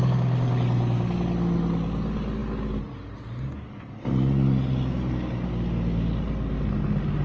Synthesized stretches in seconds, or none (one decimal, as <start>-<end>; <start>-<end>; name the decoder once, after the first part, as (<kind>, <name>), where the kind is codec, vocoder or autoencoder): none